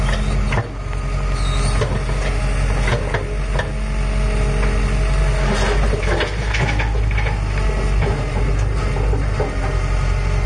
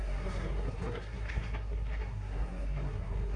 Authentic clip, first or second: first